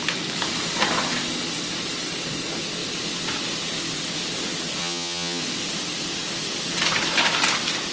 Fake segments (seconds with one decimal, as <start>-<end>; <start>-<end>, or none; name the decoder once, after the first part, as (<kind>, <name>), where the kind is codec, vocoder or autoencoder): 4.8-5.4 (vocoder, HiFi-GAN)